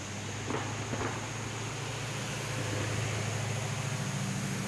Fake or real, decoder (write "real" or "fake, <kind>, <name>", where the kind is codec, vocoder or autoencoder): real